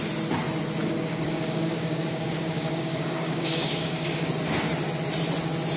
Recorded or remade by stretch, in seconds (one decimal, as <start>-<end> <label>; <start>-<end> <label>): 0.0-0.8 recorded; 0.8-4.3 remade; 4.3-5.8 recorded